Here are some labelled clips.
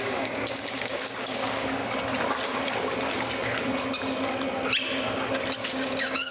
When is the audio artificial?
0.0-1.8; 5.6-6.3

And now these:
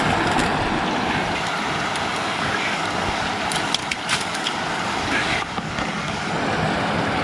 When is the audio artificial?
2.1-3.3; 3.8-6.3